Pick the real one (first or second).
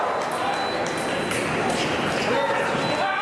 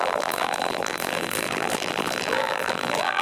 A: first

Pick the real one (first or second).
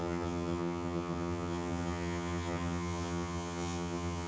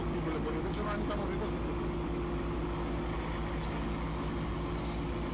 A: second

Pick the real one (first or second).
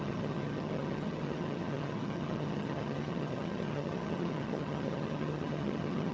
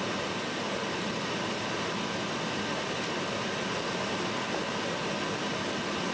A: second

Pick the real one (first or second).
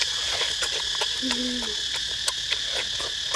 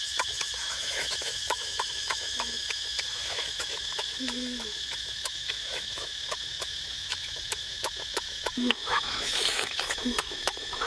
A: first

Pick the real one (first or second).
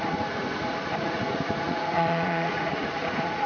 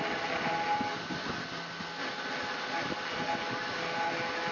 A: second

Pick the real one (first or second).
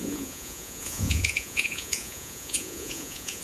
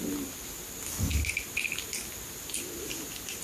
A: second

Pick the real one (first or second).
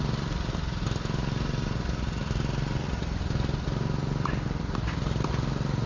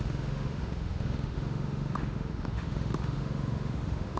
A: first